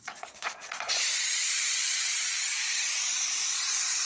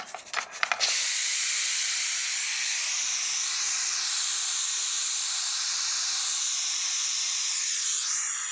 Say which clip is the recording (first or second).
second